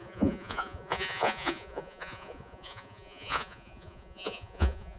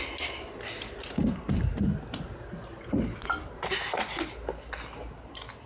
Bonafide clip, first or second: second